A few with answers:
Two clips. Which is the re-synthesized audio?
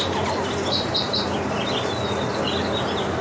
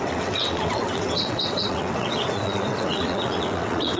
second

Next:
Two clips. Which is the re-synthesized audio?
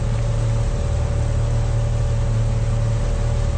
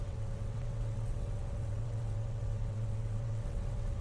second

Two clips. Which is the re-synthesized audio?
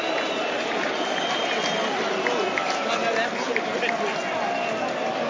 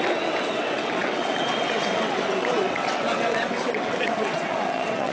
second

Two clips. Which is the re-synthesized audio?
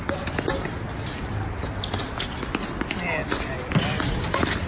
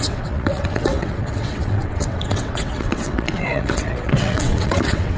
second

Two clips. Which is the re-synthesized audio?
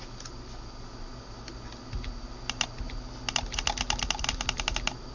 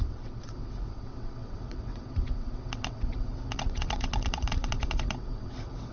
second